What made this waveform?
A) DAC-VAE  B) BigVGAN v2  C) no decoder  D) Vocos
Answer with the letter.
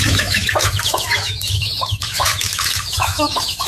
A